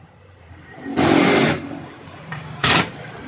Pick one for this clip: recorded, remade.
remade